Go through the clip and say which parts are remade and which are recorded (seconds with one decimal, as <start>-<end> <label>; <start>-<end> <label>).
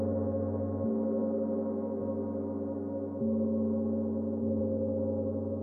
0.0-5.6 recorded